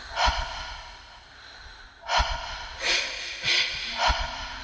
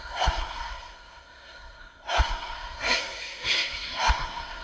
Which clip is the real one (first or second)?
first